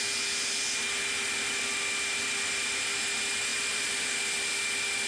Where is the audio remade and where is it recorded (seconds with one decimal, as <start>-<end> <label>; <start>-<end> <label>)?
0.0-3.5 recorded; 3.5-4.2 remade; 4.2-5.1 recorded